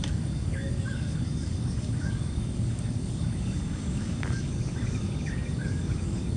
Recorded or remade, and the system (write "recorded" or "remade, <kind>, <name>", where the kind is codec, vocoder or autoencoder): remade, codec, DAC